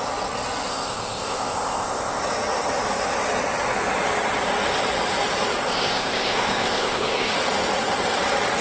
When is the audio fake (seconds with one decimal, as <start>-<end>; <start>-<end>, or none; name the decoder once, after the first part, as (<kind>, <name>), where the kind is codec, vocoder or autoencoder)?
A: 0.7-2.2 (codec, ZipCodec); 5.7-7.3